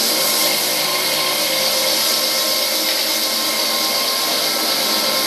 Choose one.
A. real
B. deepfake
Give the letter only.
A